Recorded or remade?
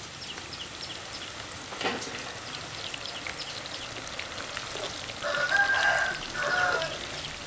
recorded